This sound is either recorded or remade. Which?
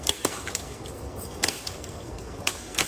remade